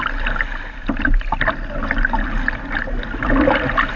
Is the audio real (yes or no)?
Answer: yes